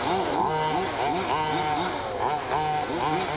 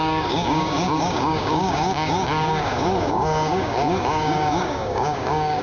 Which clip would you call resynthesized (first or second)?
second